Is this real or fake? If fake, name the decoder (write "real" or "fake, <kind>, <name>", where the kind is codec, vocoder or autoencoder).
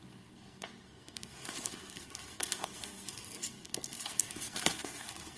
fake, codec, SNAC